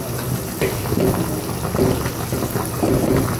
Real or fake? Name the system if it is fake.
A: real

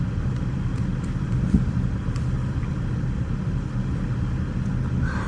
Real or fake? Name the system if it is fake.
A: real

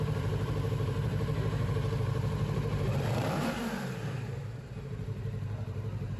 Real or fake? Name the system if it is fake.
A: fake, vocoder, BigVGAN v2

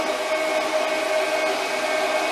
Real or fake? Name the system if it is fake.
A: real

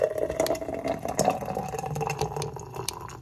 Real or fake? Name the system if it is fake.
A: real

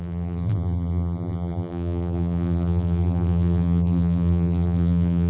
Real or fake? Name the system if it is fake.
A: fake, vocoder, BigVGAN v2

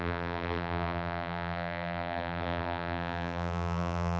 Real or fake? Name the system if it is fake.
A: fake, vocoder, BigVGAN v2